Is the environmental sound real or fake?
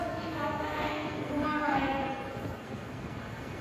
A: fake